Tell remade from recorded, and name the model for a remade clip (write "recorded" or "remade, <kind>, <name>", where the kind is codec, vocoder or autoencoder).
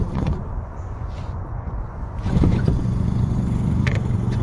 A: remade, vocoder, Vocos